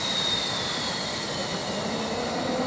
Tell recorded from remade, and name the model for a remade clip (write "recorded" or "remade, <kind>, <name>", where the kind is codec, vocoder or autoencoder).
recorded